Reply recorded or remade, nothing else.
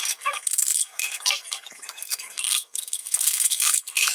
remade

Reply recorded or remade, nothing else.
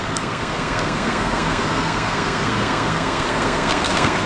remade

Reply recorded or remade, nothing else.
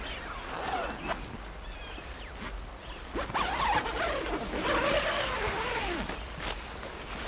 recorded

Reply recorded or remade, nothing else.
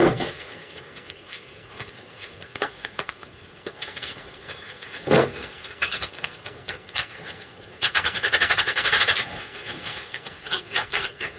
remade